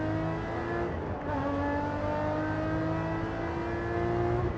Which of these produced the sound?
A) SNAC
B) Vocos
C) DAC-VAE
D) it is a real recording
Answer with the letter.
D